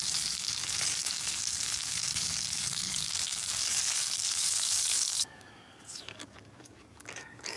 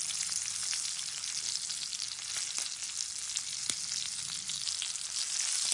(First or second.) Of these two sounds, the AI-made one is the first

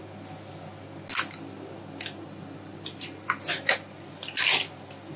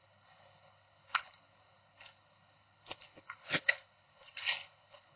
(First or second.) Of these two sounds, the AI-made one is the second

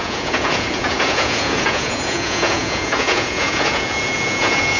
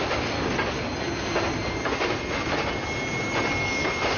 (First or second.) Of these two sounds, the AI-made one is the first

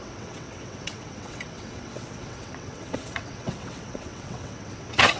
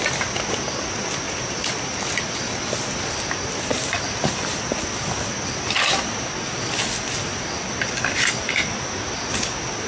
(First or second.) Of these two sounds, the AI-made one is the first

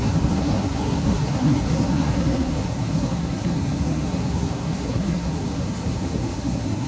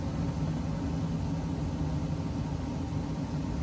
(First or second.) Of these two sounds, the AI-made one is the first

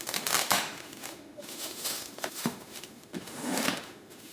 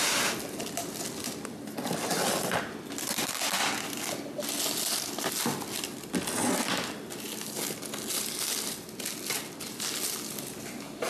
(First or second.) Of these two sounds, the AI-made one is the first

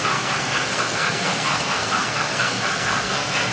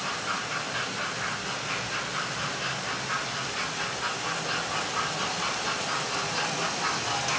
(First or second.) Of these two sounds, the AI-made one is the first